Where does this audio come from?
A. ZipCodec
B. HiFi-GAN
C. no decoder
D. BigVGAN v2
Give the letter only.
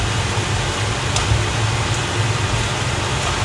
C